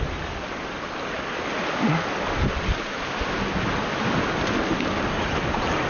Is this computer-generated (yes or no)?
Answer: no